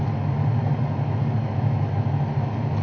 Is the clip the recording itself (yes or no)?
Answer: yes